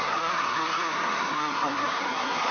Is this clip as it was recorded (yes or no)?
no